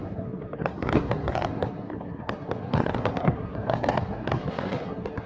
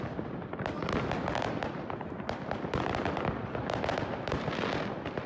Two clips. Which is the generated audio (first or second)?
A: first